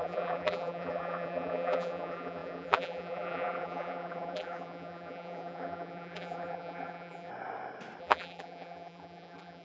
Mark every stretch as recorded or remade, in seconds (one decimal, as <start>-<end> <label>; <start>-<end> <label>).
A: 0.0-7.3 remade; 7.3-8.0 recorded; 8.0-9.6 remade